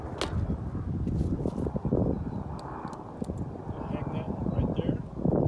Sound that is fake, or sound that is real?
real